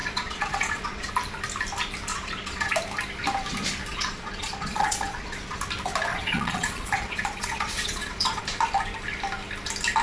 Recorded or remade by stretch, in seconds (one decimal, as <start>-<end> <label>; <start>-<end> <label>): 0.0-1.1 remade; 1.1-2.1 recorded; 2.1-2.7 remade; 2.7-3.9 recorded; 3.9-5.6 remade; 5.6-6.1 recorded; 6.1-8.4 remade; 8.4-10.0 recorded